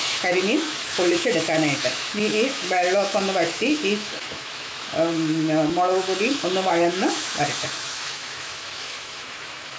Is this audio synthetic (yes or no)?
yes